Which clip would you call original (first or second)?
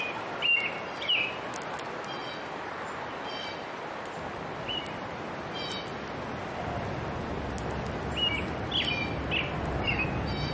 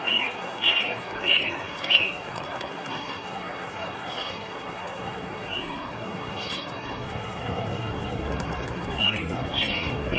first